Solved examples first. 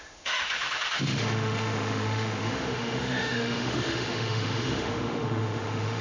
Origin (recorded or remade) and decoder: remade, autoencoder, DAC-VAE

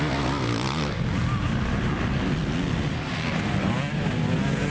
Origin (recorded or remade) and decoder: recorded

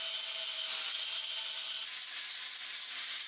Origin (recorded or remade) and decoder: recorded